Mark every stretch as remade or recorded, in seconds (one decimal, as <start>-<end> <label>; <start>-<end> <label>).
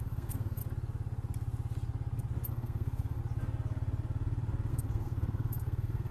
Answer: 0.0-0.6 remade; 0.6-2.5 recorded; 2.5-3.2 remade; 3.2-4.7 recorded; 4.7-6.1 remade